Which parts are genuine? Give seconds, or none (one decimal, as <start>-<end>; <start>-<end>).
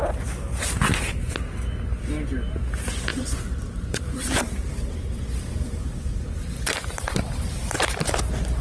0.0-3.1; 8.1-8.6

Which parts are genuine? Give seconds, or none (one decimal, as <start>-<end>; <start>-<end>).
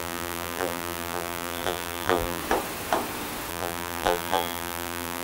2.4-3.5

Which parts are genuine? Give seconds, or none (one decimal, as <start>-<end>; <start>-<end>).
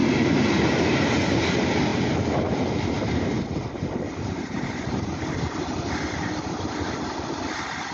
0.0-1.9; 5.2-7.9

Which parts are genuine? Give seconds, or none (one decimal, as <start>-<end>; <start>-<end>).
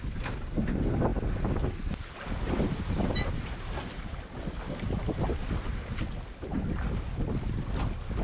0.0-8.2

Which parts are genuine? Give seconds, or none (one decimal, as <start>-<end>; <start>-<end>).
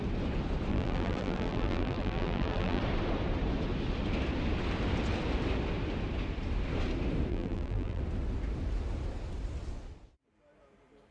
0.0-0.7; 2.8-7.3; 8.0-11.1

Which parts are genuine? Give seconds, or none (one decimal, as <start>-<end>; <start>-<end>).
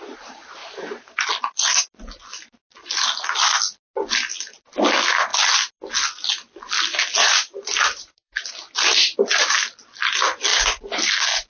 0.0-0.6; 1.3-7.2; 8.5-11.5